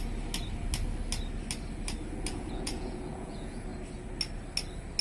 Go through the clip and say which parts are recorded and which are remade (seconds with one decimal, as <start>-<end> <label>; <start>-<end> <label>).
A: 0.0-2.3 recorded; 2.3-3.7 remade; 3.7-5.0 recorded